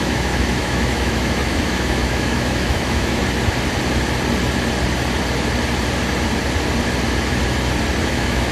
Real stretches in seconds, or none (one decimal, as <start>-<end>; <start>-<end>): 3.2-8.0